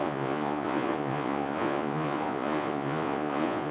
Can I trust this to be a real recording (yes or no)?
no